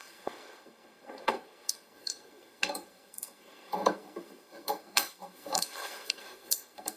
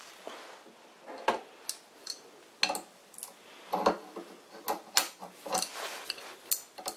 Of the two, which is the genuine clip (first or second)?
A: second